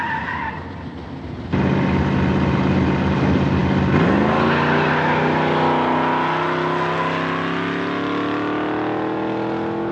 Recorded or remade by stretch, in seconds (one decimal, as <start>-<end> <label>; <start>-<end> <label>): 0.0-9.9 recorded